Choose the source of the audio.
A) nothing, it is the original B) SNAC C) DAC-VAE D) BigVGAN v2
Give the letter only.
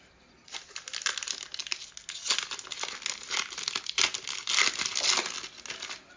A